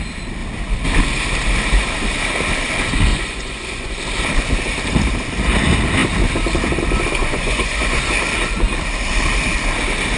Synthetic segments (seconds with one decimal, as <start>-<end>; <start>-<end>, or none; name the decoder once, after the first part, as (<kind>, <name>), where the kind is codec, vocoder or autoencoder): 3.1-4.0 (vocoder, Vocos); 7.2-8.0